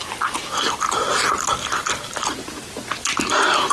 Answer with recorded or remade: recorded